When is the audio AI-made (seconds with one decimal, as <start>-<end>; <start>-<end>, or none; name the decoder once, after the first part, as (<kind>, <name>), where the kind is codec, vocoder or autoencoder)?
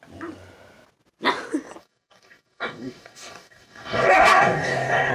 1.8-5.1 (codec, DAC)